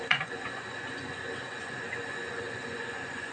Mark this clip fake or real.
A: fake